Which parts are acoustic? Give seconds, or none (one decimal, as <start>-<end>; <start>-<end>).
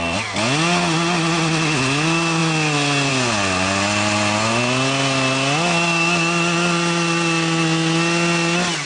0.0-8.9